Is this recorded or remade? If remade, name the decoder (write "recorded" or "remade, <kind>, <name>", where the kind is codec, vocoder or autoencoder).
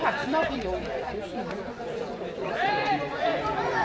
remade, vocoder, Vocos